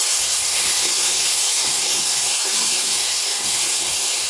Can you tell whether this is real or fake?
fake